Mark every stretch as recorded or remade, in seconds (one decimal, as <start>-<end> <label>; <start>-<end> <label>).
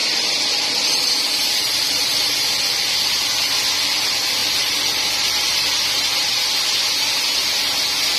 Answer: 0.0-2.3 remade; 2.3-4.4 recorded; 4.4-5.4 remade; 5.4-8.2 recorded